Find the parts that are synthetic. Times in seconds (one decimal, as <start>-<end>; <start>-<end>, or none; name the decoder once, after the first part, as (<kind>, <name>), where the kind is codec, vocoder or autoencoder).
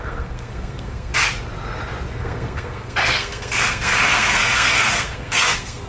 0.0-1.1 (codec, SNAC); 2.1-5.9